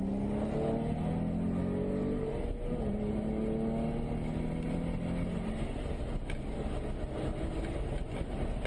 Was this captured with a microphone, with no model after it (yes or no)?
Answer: yes